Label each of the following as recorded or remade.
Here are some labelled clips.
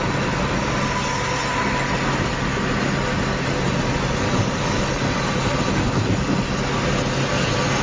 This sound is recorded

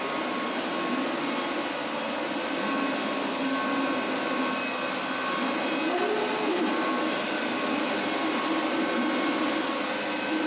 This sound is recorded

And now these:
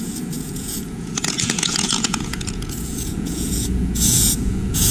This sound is remade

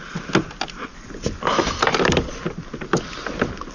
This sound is recorded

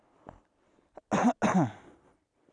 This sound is recorded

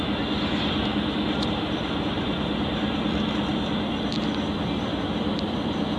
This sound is recorded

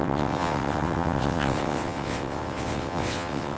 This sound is remade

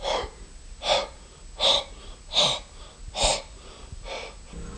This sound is recorded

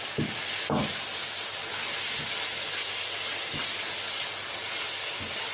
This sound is recorded